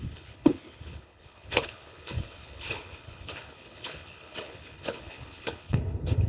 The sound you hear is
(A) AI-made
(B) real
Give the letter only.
A